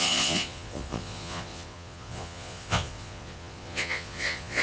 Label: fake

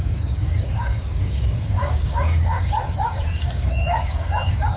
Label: fake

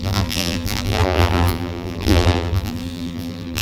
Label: fake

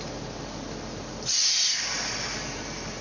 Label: real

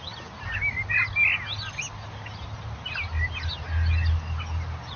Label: real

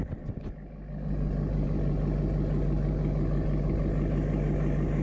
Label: real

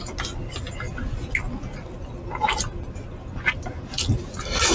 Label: real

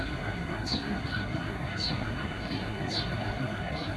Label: fake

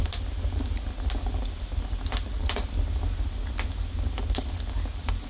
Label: real